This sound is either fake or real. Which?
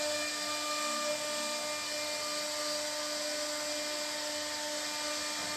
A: real